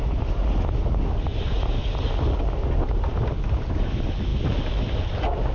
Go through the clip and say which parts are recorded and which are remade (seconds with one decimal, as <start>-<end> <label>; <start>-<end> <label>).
0.0-5.5 recorded